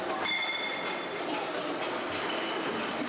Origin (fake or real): real